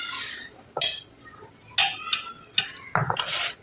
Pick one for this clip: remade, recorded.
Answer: recorded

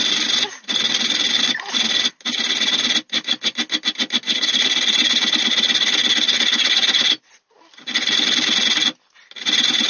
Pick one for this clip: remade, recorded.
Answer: recorded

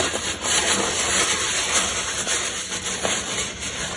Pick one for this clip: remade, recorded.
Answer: recorded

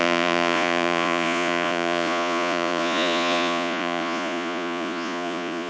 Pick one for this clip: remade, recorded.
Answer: remade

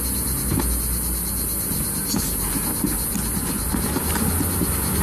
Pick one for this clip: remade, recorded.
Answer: recorded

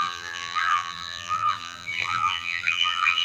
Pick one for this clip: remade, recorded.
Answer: remade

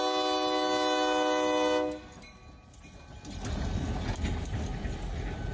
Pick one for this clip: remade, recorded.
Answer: recorded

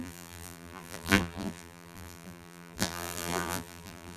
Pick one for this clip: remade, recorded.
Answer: remade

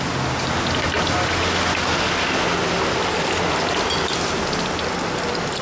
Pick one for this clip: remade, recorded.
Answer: recorded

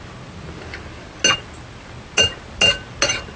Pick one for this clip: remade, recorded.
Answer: recorded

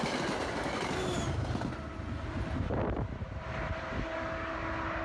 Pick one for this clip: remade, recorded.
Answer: recorded